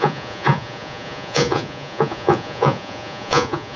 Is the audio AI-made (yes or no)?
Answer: yes